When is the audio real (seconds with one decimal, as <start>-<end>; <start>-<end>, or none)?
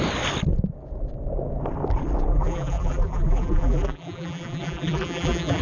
0.0-2.3